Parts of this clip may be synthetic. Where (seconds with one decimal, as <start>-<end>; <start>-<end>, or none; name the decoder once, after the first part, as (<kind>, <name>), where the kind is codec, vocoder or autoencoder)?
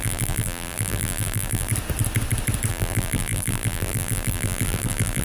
0.0-1.7 (vocoder, BigVGAN v2); 2.7-5.2